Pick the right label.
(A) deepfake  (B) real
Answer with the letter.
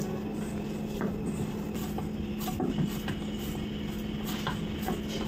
B